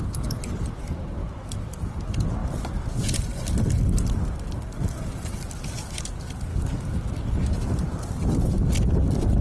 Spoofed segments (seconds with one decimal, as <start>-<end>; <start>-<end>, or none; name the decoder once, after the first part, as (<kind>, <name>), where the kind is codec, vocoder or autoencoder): 6.5-7.0 (codec, DAC)